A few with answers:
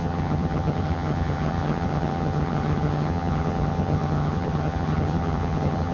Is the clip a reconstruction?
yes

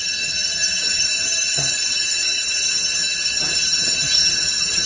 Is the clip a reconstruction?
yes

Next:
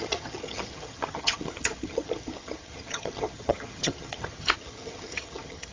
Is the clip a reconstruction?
yes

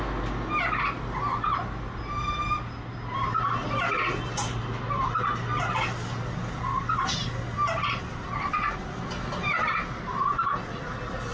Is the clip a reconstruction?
no